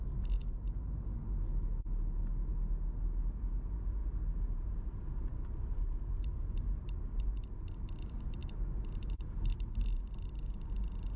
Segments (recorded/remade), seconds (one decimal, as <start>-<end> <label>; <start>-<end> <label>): 0.0-11.2 recorded